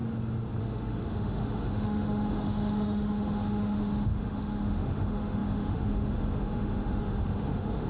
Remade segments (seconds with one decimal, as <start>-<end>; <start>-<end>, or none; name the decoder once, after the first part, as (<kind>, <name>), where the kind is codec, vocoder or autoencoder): 0.6-7.9 (autoencoder, DAC-VAE)